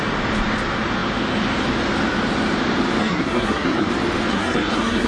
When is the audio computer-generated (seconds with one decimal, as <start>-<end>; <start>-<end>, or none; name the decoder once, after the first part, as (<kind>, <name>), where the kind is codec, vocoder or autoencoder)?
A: 3.0-3.9 (codec, SNAC); 4.3-5.1